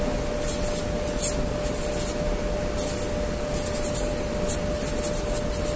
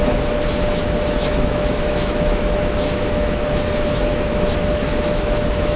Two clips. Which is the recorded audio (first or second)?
first